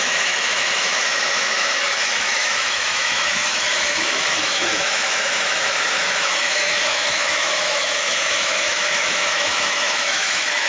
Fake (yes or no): yes